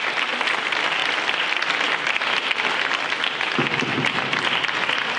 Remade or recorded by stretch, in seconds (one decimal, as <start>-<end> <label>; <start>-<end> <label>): 0.0-1.0 remade; 1.0-4.1 recorded; 4.1-5.2 remade